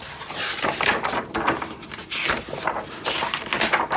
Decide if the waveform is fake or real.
real